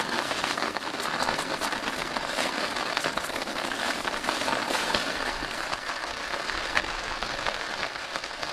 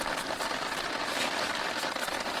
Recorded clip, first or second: second